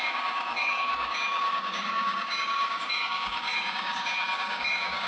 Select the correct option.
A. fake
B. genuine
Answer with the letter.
A